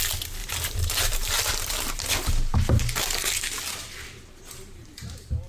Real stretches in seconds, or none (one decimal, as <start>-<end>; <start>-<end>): 0.0-0.4; 2.1-5.5